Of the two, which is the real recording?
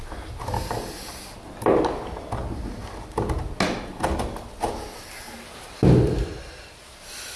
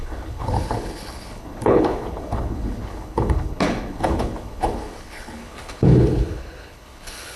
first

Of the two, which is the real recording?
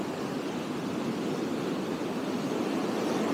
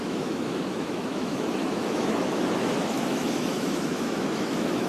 first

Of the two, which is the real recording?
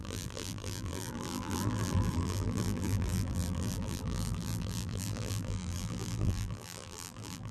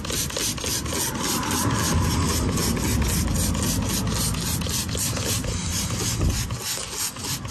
second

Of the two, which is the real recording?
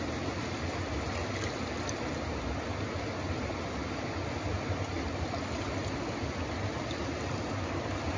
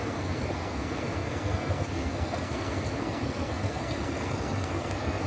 first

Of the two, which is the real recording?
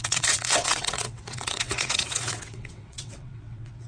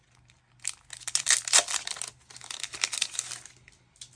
second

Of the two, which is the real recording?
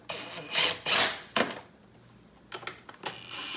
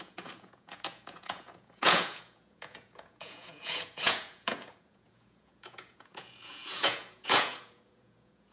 first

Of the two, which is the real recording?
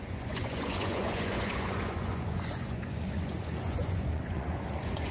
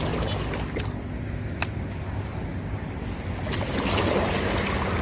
second